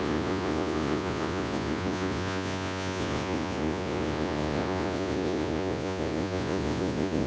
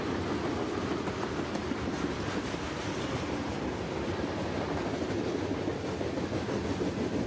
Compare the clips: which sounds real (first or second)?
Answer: second